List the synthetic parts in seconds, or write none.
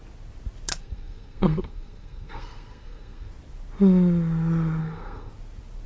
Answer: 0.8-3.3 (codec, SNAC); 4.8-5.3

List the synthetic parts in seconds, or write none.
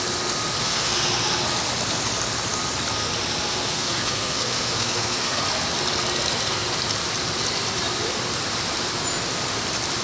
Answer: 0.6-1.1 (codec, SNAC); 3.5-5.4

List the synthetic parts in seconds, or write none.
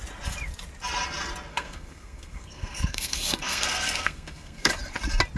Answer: 1.5-4.7 (codec, SNAC)